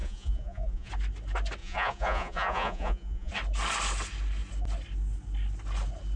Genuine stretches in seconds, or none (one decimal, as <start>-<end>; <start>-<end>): 0.9-1.6; 3.3-6.2